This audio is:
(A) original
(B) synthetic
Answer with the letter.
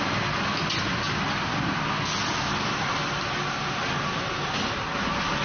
A